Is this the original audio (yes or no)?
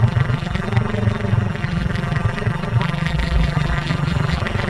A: no